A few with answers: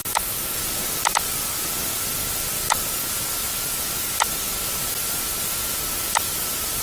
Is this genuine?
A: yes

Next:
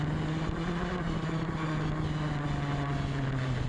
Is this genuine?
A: yes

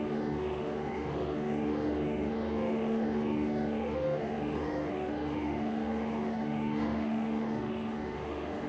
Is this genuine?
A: no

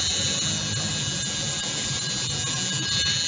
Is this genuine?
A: yes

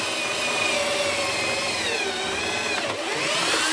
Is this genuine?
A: yes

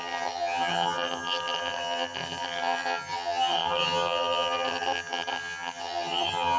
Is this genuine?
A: no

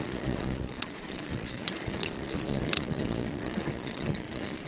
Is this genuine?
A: no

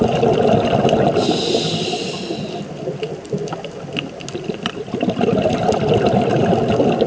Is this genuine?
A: yes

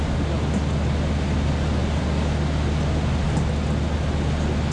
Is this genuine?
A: yes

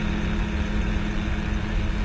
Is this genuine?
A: yes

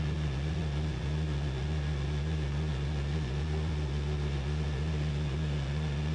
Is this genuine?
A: no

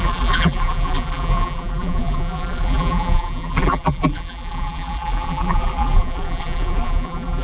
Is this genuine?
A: no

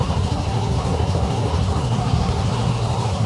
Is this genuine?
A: no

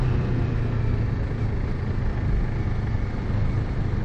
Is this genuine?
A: yes